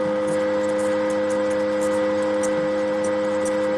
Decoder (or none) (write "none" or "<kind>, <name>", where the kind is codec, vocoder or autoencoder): none